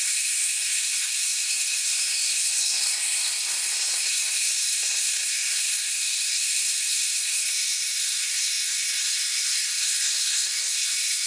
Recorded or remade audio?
remade